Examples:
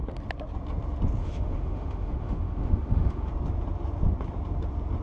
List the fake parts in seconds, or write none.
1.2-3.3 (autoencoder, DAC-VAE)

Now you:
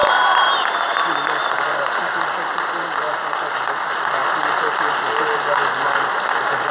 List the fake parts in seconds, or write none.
none

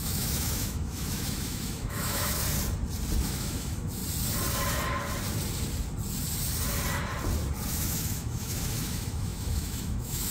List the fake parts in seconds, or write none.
0.0-2.4 (autoencoder, DAC-VAE); 3.2-4.0; 7.7-10.3